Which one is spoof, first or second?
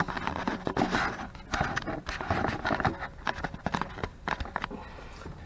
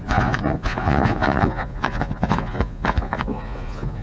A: second